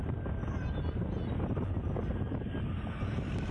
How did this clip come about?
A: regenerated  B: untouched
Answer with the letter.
B